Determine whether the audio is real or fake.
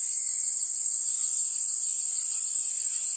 fake